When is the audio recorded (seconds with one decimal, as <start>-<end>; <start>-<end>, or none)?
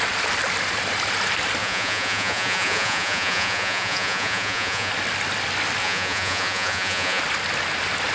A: 0.0-1.6; 4.9-5.8; 7.2-8.1